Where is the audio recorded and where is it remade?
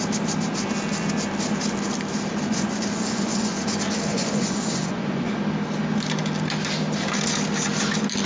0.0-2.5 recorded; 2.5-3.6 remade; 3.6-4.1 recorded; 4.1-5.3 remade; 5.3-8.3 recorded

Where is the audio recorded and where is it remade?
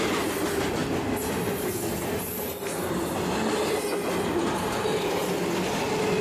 0.0-6.2 recorded